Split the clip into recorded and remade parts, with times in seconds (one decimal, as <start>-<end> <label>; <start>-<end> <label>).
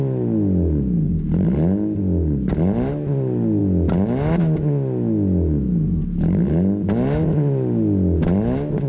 0.0-8.9 recorded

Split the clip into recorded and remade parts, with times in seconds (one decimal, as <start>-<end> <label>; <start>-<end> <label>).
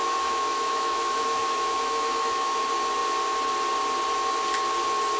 0.0-2.6 remade; 2.6-5.2 recorded